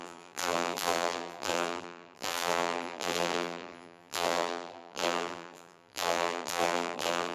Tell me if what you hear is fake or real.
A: fake